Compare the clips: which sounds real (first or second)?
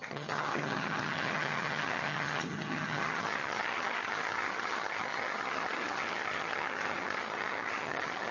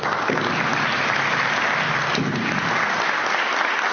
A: second